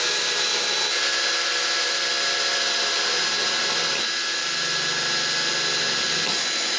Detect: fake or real real